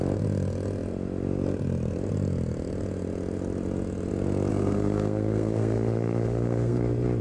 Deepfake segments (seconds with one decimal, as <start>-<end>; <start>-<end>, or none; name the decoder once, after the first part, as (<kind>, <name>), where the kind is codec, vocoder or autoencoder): 4.5-6.8 (codec, SNAC)